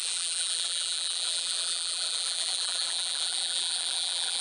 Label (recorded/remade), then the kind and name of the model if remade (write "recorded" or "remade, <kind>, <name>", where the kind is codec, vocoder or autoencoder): remade, vocoder, BigVGAN v2